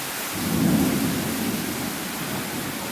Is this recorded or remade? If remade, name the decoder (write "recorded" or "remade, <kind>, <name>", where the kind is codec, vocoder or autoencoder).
recorded